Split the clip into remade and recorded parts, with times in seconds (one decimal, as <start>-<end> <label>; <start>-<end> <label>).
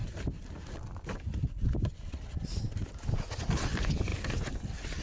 0.0-5.0 recorded